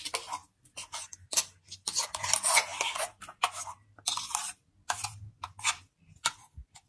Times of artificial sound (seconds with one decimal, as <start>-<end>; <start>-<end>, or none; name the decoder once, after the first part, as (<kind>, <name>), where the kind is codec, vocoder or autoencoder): none